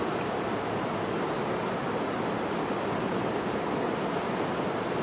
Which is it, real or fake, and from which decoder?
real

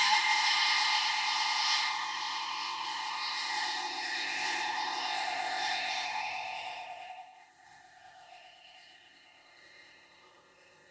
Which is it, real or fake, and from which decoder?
fake, codec, ZipCodec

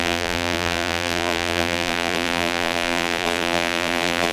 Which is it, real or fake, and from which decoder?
fake, vocoder, BigVGAN v2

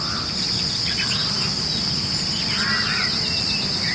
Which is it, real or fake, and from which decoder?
real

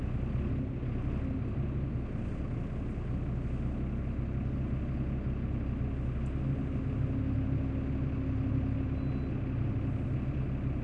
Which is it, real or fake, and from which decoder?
real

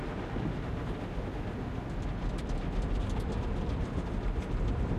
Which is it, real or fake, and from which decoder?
real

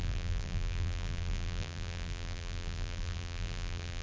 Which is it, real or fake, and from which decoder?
fake, vocoder, BigVGAN v2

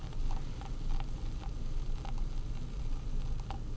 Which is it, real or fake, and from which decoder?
real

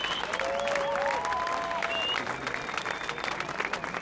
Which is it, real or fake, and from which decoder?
real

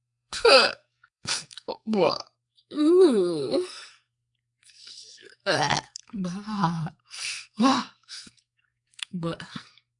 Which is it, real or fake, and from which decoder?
fake, codec, SNAC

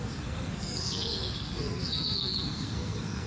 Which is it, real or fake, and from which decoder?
fake, codec, SNAC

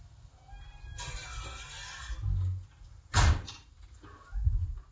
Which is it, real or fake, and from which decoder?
real